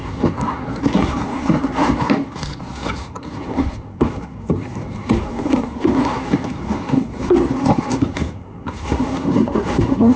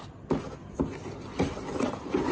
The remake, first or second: first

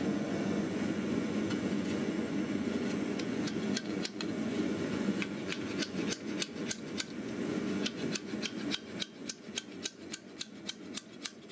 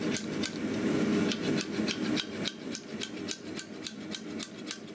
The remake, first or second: first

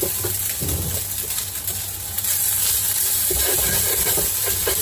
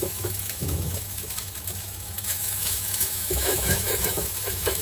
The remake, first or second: second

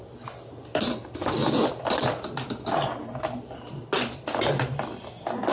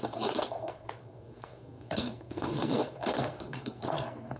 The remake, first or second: second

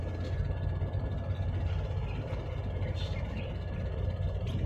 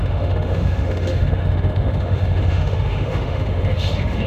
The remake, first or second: second